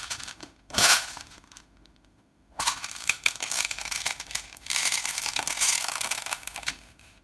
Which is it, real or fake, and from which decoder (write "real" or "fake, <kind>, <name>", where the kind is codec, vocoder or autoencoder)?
fake, autoencoder, DAC-VAE